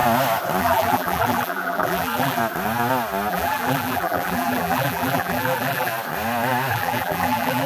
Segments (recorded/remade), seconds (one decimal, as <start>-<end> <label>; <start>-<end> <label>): 0.0-0.6 recorded; 0.6-2.4 remade; 2.4-3.3 recorded; 3.3-5.9 remade; 5.9-6.7 recorded; 6.7-7.7 remade